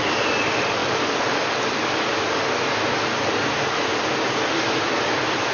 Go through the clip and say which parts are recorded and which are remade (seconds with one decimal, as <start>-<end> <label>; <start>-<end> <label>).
0.0-0.8 remade; 0.8-3.0 recorded; 3.0-5.5 remade